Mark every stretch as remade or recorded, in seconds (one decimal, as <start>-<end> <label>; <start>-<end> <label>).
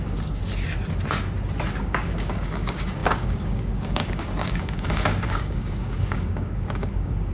0.0-0.4 remade; 0.4-1.7 recorded; 1.7-7.3 remade